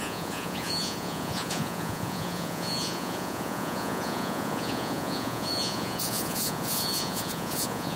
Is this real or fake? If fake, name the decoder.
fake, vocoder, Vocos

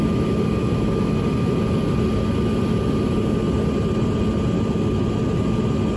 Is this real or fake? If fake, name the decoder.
real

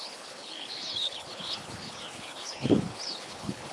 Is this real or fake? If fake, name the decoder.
fake, codec, HILCodec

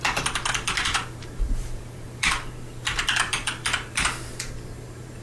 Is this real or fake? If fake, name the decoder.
fake, vocoder, BigVGAN v2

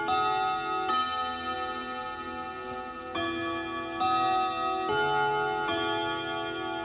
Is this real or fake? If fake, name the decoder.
real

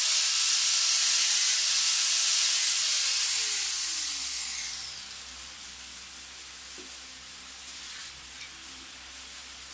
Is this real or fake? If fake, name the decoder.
real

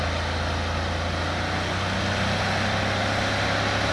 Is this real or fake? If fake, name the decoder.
real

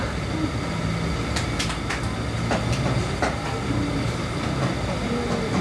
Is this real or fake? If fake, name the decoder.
real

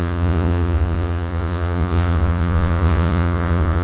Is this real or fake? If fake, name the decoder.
fake, vocoder, Vocos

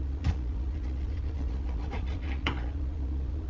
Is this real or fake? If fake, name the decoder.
fake, vocoder, Vocos